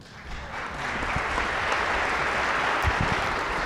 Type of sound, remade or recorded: recorded